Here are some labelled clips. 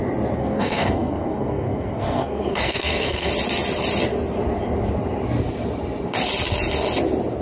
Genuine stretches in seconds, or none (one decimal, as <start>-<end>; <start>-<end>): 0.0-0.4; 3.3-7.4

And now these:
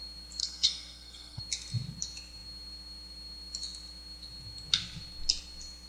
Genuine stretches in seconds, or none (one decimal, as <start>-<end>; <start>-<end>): 0.0-0.4; 1.4-5.9

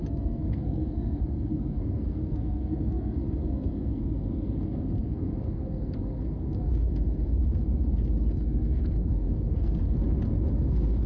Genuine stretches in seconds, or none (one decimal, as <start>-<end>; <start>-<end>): 7.4-8.3; 10.0-10.6

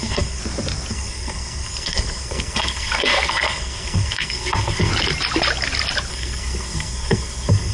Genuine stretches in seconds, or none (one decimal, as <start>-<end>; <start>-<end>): 0.4-0.9; 4.9-6.1

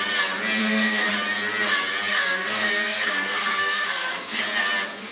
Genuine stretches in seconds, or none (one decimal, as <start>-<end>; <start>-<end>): 0.0-0.6; 1.1-2.1; 4.4-5.1

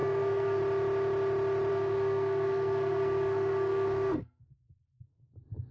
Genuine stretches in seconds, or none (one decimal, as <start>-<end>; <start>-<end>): 0.6-1.7; 5.1-5.7

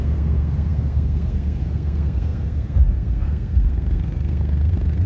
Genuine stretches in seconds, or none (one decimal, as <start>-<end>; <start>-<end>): none

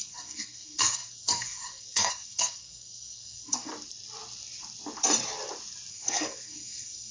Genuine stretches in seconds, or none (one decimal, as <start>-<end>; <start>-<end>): 3.7-5.9